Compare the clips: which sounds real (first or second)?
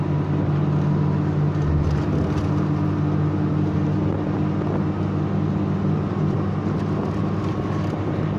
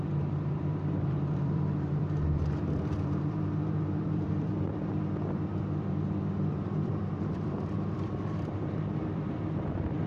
first